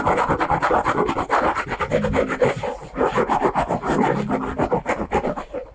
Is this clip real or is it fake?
real